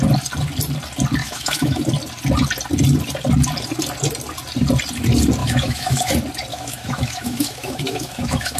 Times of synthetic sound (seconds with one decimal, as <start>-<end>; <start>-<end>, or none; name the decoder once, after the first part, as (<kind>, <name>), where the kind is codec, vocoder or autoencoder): 1.2-1.8 (autoencoder, DAC-VAE); 5.4-6.1; 6.5-8.6